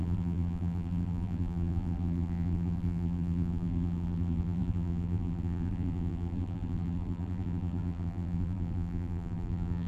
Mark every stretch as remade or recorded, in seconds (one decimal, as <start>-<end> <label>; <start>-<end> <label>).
0.0-9.9 remade

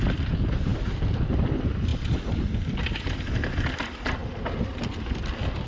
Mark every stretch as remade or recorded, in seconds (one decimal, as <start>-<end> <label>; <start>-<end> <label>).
0.0-5.7 recorded

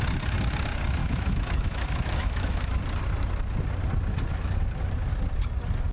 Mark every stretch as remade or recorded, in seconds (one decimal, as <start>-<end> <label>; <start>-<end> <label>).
0.0-1.0 recorded; 1.0-2.8 remade; 2.8-5.9 recorded

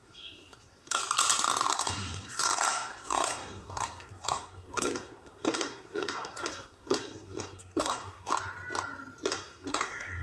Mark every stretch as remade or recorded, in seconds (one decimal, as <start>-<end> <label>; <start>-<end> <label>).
0.0-1.0 remade; 1.0-1.7 recorded; 1.7-8.3 remade; 8.3-9.3 recorded; 9.3-10.2 remade